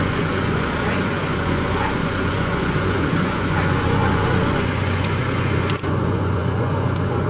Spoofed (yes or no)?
yes